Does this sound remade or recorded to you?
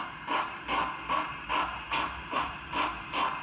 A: recorded